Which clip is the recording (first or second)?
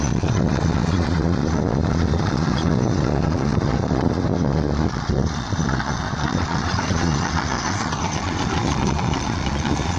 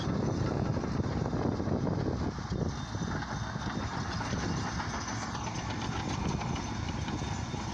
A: second